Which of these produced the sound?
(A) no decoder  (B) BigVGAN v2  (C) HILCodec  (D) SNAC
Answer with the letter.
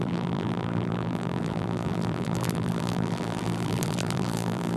B